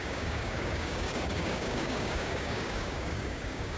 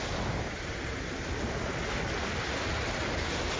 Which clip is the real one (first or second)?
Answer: second